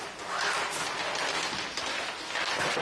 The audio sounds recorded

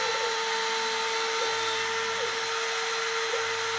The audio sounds recorded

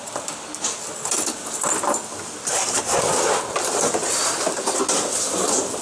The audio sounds recorded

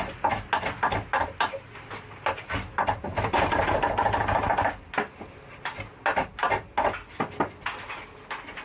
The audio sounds recorded